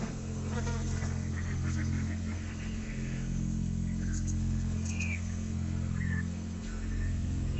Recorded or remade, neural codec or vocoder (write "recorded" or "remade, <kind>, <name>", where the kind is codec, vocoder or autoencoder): remade, codec, SNAC